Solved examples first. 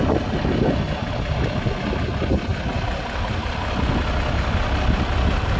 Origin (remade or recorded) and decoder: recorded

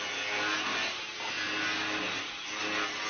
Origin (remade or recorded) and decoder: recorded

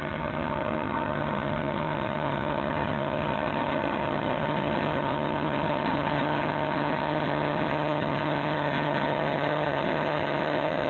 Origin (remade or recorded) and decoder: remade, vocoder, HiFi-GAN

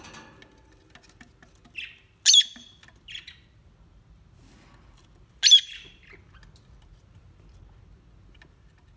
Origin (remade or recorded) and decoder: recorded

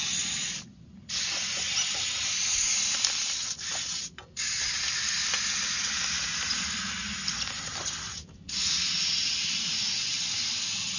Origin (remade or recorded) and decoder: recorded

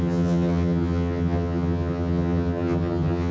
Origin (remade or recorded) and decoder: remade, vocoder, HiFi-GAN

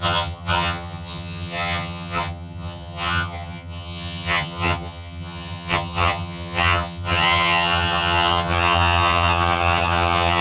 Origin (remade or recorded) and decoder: remade, vocoder, HiFi-GAN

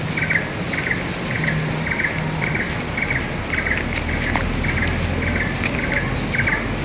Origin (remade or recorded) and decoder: recorded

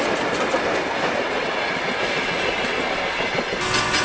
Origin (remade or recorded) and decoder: recorded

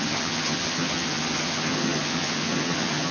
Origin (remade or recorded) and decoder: remade, vocoder, HiFi-GAN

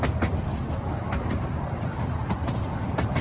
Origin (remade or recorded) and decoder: recorded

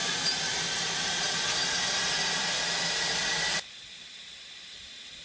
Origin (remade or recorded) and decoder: recorded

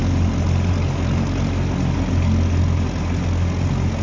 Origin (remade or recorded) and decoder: recorded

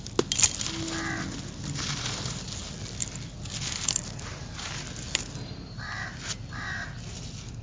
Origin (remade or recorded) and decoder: recorded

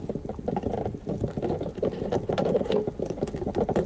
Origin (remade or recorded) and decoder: recorded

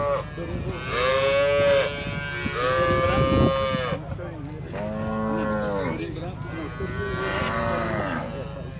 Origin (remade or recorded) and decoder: recorded